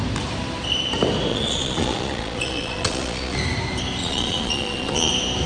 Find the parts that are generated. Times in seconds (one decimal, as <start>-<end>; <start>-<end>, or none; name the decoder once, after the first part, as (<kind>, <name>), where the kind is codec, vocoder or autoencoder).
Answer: 1.3-3.4 (vocoder, Vocos); 4.0-5.1